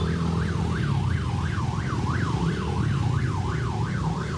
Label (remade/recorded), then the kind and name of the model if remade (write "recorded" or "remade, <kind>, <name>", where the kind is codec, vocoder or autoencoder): recorded